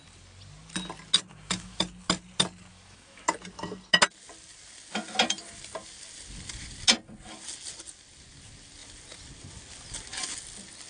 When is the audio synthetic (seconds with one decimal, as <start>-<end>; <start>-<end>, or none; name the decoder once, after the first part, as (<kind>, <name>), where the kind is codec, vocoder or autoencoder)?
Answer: 1.3-1.8 (autoencoder, DAC-VAE); 2.7-3.3